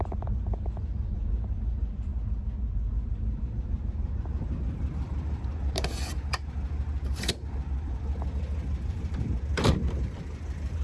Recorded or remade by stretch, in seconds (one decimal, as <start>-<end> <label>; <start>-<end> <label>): 0.0-2.1 remade; 2.1-3.0 recorded; 3.0-10.8 remade